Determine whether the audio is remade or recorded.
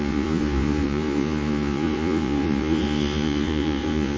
remade